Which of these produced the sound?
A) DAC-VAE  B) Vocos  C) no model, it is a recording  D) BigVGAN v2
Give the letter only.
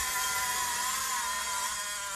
C